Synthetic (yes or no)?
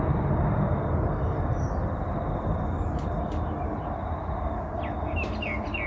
no